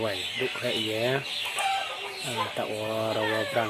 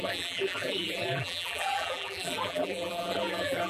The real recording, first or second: first